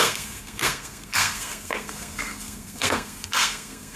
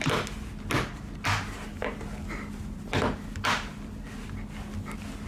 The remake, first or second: first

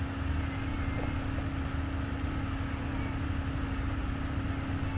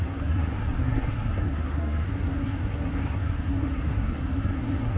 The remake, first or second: second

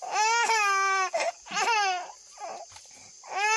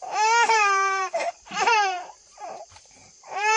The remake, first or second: second